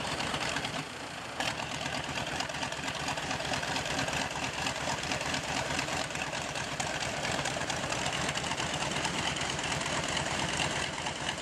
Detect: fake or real fake